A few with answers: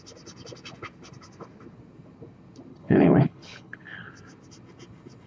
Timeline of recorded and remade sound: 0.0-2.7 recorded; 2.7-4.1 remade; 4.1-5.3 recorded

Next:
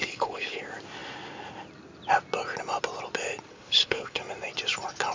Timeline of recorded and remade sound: 0.0-0.6 remade; 0.6-3.5 recorded; 3.5-4.2 remade; 4.2-5.1 recorded

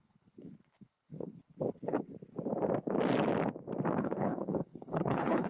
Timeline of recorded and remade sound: 0.0-2.1 remade; 2.1-4.0 recorded; 4.0-5.5 remade

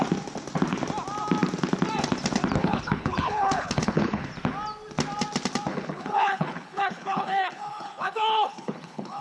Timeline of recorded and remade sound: 0.0-2.6 recorded; 2.6-4.3 remade; 4.3-5.7 recorded; 5.7-9.2 remade

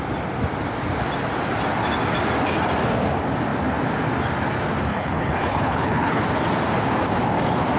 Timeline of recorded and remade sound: 0.0-4.9 recorded; 4.9-6.2 remade; 6.2-7.8 recorded

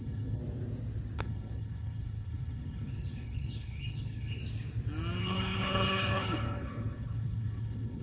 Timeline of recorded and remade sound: 0.0-0.4 remade; 0.4-1.2 recorded; 1.2-4.4 remade; 4.4-5.2 recorded; 5.2-8.0 remade

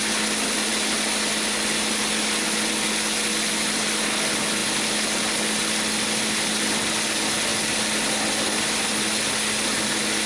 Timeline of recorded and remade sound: 0.0-10.3 recorded